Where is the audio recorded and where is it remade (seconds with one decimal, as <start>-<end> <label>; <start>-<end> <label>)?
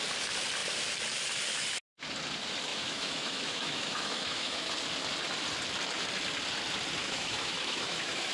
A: 0.0-2.7 recorded; 2.7-4.7 remade; 4.7-7.0 recorded; 7.0-8.3 remade